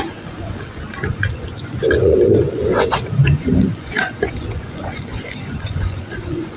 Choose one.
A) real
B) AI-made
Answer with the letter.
B